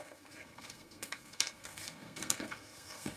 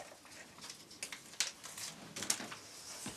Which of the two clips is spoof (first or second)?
first